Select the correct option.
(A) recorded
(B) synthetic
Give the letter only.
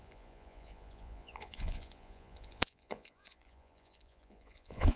B